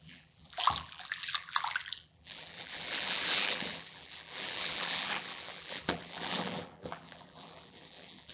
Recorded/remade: remade